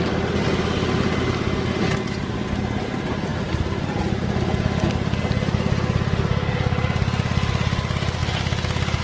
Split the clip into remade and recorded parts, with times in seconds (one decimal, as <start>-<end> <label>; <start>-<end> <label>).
0.0-3.3 recorded; 3.3-4.0 remade; 4.0-9.0 recorded